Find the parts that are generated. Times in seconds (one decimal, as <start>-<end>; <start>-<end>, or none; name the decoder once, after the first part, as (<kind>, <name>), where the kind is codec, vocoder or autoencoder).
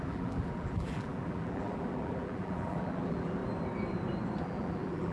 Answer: 0.0-3.4 (vocoder, BigVGAN v2); 4.4-5.1